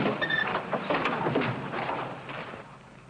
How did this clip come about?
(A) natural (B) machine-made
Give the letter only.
A